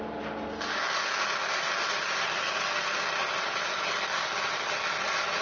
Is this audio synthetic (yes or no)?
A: no